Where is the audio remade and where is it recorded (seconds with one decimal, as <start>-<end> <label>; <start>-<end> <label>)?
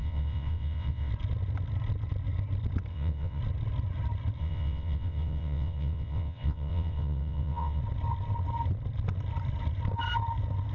0.0-1.1 remade; 1.1-2.9 recorded; 2.9-3.4 remade; 3.4-4.4 recorded; 4.4-7.8 remade; 7.8-10.7 recorded